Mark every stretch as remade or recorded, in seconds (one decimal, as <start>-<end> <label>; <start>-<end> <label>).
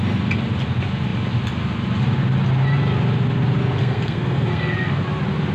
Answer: 0.0-3.8 recorded; 3.8-5.0 remade; 5.0-5.5 recorded